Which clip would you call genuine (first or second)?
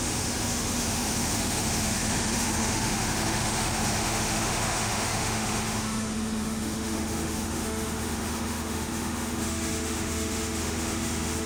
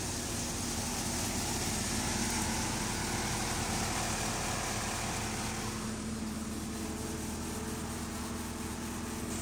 second